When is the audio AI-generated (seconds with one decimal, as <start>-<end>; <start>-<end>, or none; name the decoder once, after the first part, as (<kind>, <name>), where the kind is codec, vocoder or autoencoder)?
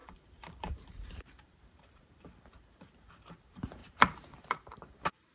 0.0-5.3 (vocoder, BigVGAN v2)